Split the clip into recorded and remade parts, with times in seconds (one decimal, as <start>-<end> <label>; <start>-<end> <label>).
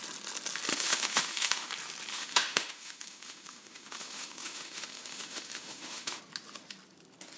0.0-0.7 recorded; 0.7-1.7 remade; 1.7-2.1 recorded; 2.1-6.2 remade; 6.2-7.4 recorded